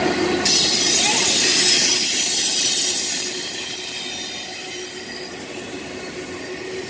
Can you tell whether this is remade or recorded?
recorded